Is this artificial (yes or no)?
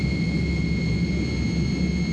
no